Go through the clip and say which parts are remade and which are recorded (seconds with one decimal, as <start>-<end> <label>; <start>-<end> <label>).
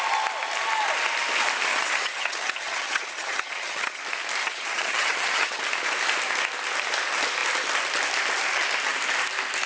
0.0-1.7 recorded; 1.7-4.0 remade; 4.0-4.4 recorded; 4.4-5.6 remade; 5.6-9.7 recorded